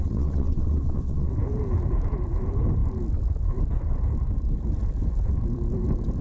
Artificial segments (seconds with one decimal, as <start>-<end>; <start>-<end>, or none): 0.0-1.3